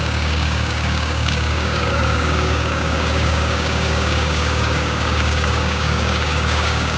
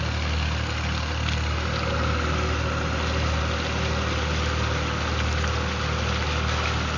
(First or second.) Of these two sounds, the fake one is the first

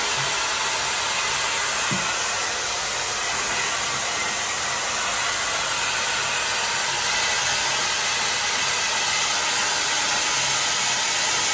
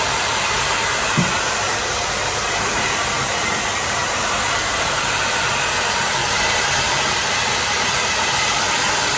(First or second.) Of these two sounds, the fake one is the second